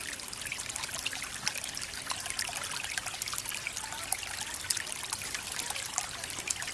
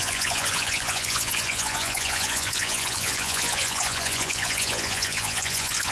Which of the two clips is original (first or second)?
first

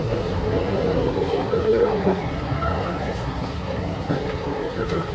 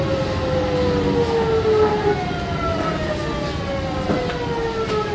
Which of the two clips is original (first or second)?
second